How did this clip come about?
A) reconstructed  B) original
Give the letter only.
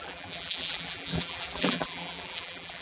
A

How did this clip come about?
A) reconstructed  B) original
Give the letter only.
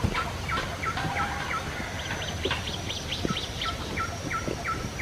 B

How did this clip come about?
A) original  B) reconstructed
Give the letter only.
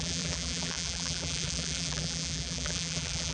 B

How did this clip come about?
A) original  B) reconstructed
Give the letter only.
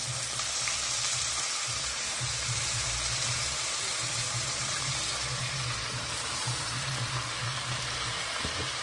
B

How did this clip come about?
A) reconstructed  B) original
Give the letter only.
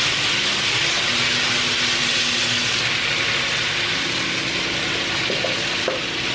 A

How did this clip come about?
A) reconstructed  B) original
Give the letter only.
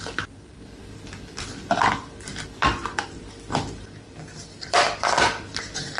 A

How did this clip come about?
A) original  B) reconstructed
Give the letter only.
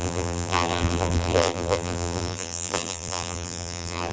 B